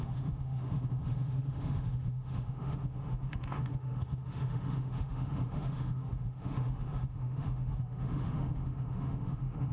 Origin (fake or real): fake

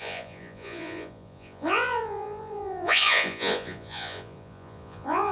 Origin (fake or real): fake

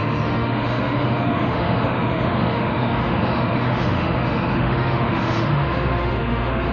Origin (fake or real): fake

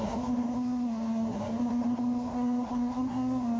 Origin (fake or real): fake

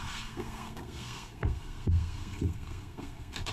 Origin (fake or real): fake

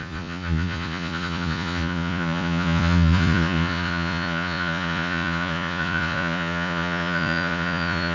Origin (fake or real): fake